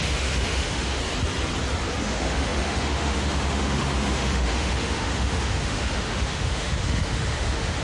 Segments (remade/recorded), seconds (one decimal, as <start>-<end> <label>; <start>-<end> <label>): 0.0-1.0 remade; 1.0-2.0 recorded; 2.0-7.8 remade